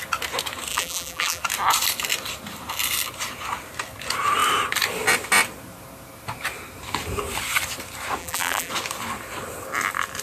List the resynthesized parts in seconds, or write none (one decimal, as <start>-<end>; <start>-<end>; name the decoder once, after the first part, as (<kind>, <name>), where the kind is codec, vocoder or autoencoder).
0.7-1.4 (vocoder, BigVGAN v2); 8.2-8.7